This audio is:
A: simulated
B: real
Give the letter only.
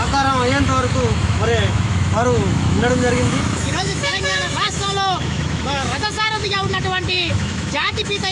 A